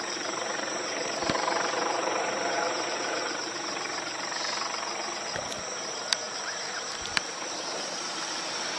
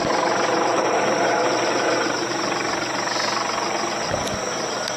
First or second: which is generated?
first